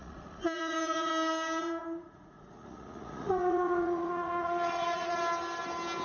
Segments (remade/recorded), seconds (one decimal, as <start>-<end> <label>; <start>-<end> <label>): 0.0-1.1 remade; 1.1-1.6 recorded; 1.6-5.2 remade; 5.2-6.0 recorded